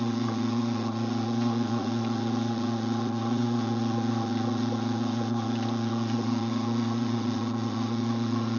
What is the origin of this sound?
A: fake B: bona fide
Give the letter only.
A